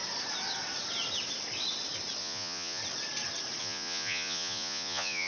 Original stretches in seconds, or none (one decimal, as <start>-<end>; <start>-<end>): 0.0-2.2; 2.8-3.6